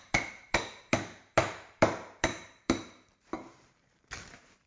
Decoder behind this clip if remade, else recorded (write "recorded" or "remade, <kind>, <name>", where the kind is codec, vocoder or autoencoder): remade, vocoder, BigVGAN v2